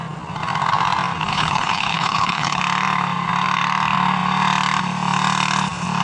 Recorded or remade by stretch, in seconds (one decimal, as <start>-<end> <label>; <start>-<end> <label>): 0.0-1.3 recorded; 1.3-2.6 remade; 2.6-6.0 recorded